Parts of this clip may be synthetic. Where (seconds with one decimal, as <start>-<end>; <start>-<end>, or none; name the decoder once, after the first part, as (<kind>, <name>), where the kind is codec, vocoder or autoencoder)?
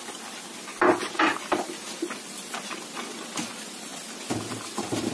none